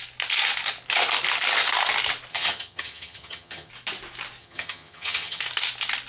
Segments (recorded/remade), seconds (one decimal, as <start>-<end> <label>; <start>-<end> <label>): 0.0-2.3 recorded; 2.3-3.7 remade; 3.7-4.4 recorded; 4.4-5.4 remade; 5.4-6.1 recorded